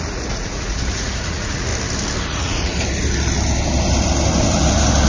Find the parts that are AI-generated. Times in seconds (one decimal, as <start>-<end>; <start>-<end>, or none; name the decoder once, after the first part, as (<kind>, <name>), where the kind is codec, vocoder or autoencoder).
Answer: 0.0-1.7 (vocoder, Vocos); 2.2-2.7